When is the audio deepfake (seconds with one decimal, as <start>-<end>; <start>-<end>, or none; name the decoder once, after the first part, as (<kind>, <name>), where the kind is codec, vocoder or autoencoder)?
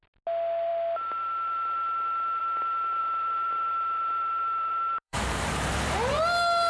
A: 3.0-5.5 (vocoder, BigVGAN v2)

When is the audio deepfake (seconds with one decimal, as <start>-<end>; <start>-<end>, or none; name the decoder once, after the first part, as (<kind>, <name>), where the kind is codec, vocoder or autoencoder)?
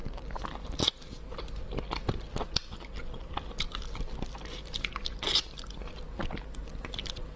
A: none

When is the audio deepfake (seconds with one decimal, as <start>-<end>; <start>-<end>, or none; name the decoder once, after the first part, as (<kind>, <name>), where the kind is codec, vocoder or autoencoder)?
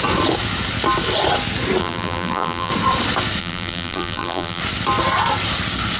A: 1.8-2.7 (vocoder, BigVGAN v2); 3.4-4.6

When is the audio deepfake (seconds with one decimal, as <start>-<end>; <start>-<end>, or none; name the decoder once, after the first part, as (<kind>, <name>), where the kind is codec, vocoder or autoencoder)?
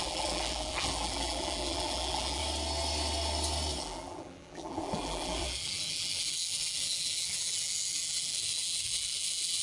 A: 0.0-2.4 (vocoder, BigVGAN v2); 3.8-9.6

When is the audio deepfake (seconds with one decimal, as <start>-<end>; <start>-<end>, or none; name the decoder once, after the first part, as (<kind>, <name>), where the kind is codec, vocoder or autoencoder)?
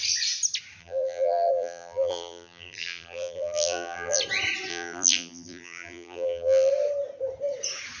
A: 0.8-4.2 (vocoder, BigVGAN v2); 4.7-6.7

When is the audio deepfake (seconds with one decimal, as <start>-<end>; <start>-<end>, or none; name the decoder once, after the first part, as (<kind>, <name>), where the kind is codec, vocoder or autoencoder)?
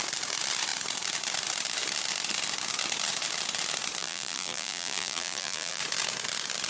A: 4.0-5.8 (vocoder, BigVGAN v2)